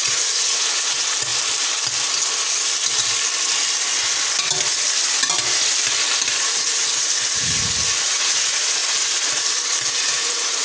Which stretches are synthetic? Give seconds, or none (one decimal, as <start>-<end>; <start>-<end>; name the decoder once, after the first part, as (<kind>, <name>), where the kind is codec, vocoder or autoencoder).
0.0-1.3 (vocoder, Vocos); 6.4-8.8; 9.9-10.6